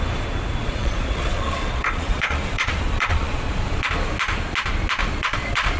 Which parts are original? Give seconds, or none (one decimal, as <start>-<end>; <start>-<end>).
0.0-0.6; 3.9-5.0